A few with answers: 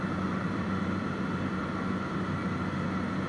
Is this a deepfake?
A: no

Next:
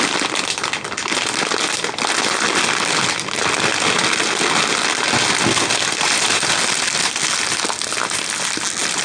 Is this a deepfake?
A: no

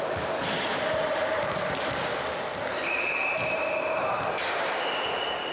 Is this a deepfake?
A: yes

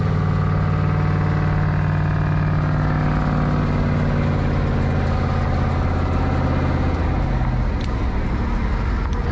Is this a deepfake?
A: no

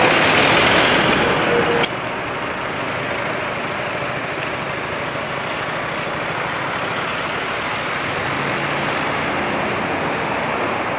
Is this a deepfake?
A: no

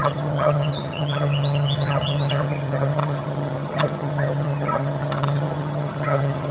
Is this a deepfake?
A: yes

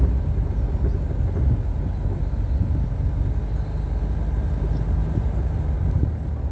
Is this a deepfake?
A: no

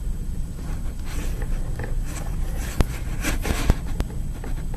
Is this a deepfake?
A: no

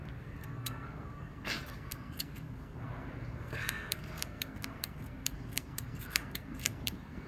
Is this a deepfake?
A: yes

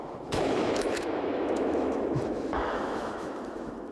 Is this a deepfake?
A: yes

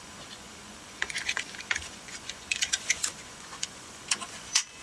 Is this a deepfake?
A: yes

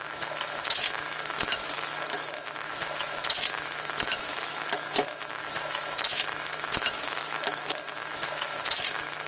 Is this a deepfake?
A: yes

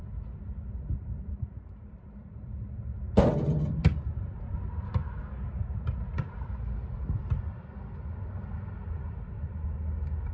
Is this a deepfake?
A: no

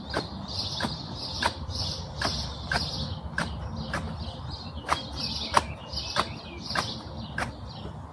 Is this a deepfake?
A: no